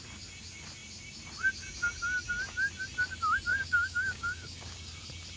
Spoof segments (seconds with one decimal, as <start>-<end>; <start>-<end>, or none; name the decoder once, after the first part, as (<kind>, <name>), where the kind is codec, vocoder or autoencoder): 3.5-4.9 (codec, DAC)